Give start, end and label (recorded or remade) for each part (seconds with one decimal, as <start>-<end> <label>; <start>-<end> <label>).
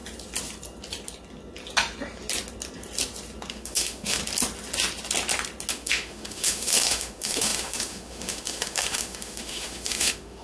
0.0-3.5 recorded; 3.5-4.2 remade; 4.2-5.7 recorded; 5.7-10.4 remade